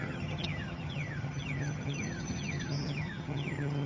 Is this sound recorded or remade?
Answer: remade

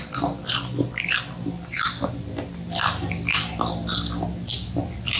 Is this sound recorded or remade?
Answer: recorded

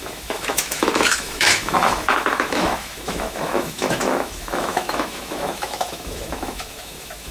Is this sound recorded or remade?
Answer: remade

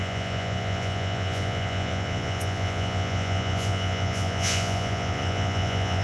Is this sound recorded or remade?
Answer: remade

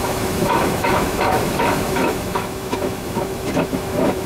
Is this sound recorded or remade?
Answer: remade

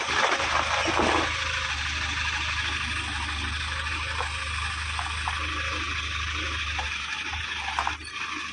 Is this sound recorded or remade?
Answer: recorded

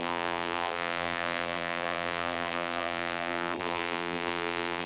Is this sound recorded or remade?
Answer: remade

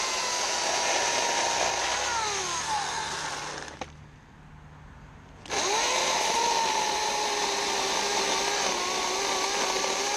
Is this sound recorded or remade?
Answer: recorded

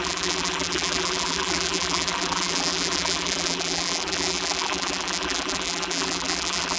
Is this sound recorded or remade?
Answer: remade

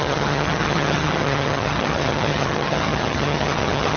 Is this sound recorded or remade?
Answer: remade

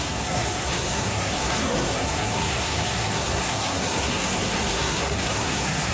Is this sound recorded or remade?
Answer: remade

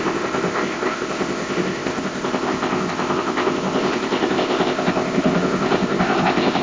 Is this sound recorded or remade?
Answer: remade